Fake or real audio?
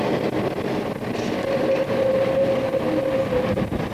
real